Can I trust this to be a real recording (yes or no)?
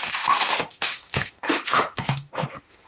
no